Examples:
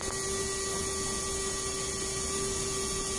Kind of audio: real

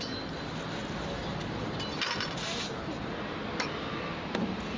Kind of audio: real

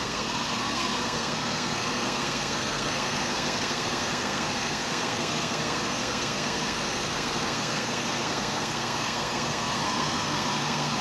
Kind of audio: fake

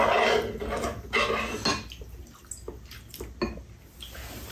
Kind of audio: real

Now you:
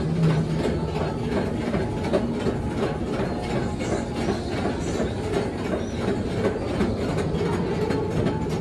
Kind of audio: real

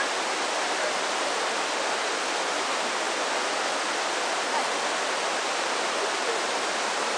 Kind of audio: real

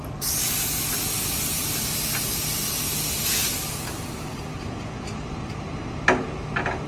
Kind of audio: real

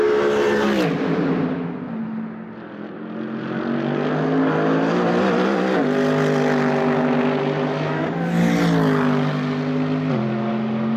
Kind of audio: real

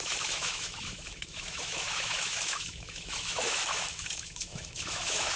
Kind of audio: fake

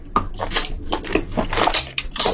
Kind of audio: real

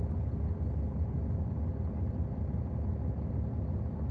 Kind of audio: real